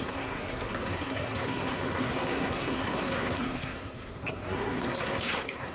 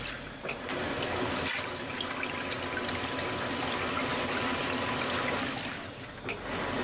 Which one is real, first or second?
second